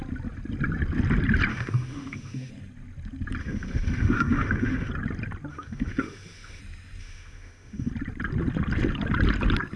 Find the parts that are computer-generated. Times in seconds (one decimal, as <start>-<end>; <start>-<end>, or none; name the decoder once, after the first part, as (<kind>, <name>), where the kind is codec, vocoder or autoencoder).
1.5-2.5 (autoencoder, DAC-VAE); 3.4-4.9; 5.5-6.6; 7.0-7.9